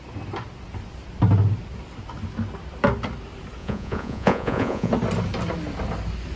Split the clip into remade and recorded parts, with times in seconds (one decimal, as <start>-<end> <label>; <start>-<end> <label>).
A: 0.0-3.6 recorded; 3.6-4.9 remade; 4.9-6.4 recorded